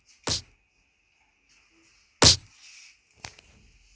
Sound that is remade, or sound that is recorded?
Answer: recorded